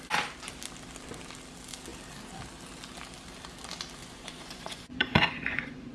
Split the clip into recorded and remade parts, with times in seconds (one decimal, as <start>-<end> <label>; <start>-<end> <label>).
0.0-4.0 recorded; 4.0-5.9 remade